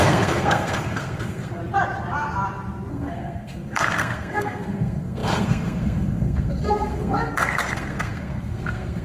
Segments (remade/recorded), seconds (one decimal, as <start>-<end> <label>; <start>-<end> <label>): 0.0-1.6 remade; 1.6-2.9 recorded; 2.9-9.0 remade